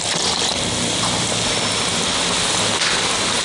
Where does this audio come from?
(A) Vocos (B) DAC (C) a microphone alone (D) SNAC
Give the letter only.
C